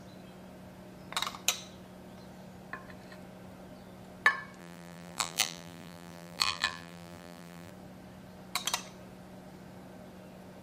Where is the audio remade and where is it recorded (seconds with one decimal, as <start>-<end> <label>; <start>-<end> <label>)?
0.0-4.6 recorded; 4.6-7.7 remade; 7.7-10.6 recorded